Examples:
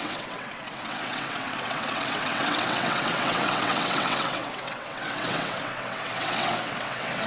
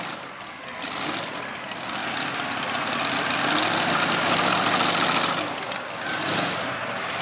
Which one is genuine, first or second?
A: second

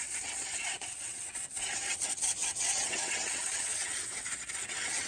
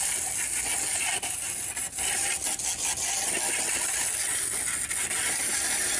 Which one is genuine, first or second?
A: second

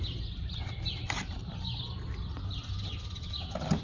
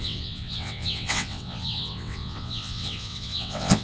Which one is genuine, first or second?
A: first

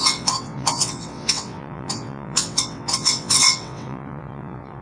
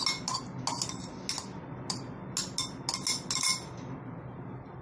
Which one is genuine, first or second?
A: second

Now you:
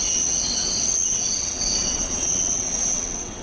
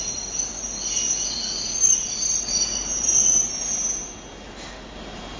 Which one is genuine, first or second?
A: second